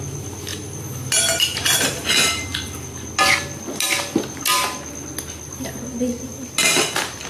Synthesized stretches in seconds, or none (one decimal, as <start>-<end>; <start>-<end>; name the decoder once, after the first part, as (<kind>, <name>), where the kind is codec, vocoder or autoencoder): none